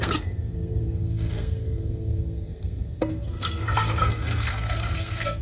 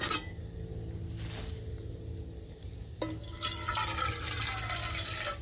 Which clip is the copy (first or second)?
first